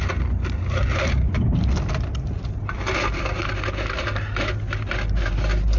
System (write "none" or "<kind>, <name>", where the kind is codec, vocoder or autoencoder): none